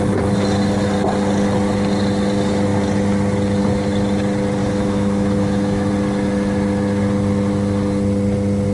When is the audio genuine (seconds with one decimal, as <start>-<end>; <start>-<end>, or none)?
0.0-4.6; 5.9-8.7